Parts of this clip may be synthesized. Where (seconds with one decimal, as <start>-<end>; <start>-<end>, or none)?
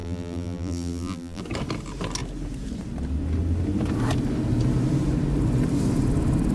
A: 0.0-1.4